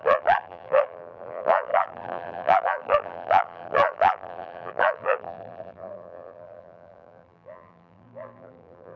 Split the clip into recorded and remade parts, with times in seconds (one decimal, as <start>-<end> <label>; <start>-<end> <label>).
0.0-9.0 remade